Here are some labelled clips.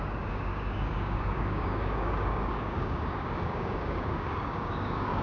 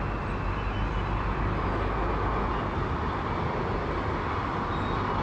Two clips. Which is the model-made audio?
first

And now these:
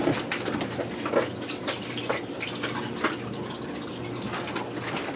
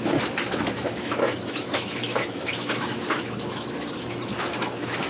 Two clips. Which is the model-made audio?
second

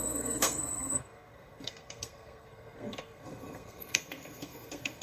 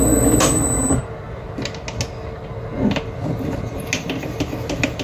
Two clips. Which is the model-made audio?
first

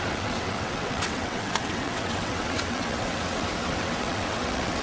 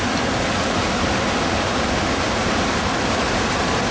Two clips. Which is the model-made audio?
first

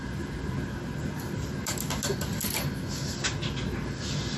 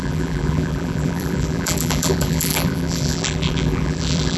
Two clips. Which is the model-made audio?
second